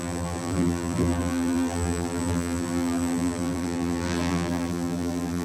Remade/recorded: remade